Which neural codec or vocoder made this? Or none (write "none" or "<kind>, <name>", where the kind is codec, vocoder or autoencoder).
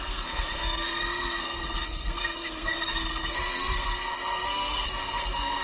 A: codec, SNAC